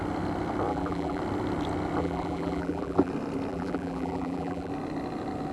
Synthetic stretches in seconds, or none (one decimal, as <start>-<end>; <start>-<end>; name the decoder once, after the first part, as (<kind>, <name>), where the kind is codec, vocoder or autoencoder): 0.7-1.2 (vocoder, BigVGAN v2); 2.0-3.1; 3.5-4.7